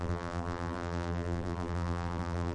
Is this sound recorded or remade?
remade